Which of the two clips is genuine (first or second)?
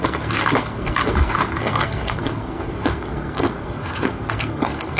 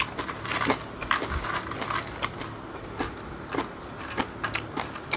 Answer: second